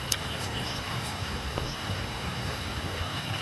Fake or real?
fake